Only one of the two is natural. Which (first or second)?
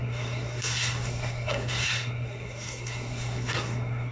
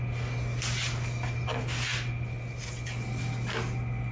second